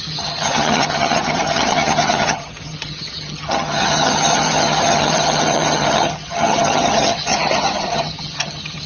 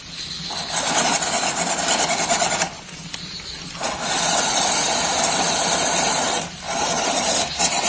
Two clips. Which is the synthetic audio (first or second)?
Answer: first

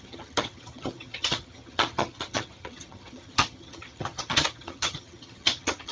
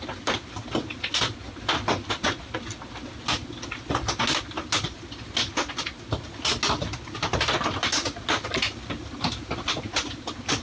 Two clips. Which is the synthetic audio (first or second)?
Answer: first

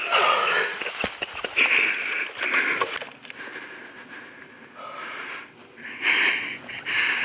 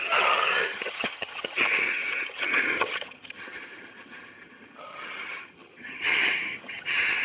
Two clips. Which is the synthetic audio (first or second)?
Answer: second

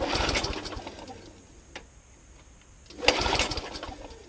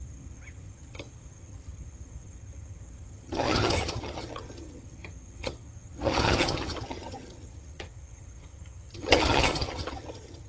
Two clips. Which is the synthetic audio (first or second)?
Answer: second